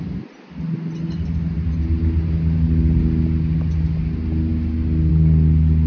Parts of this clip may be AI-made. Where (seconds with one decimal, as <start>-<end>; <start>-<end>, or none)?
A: none